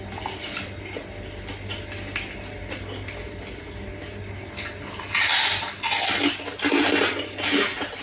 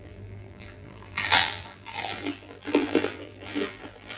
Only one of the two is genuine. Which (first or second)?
first